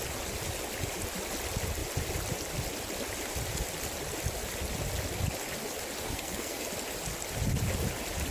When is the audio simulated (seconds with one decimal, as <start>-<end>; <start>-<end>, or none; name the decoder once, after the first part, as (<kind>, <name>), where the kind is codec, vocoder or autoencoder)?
6.0-6.7 (codec, SNAC)